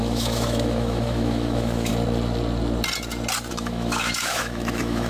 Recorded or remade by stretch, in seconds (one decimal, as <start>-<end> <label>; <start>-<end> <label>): 0.0-1.9 remade; 1.9-3.5 recorded; 3.5-5.1 remade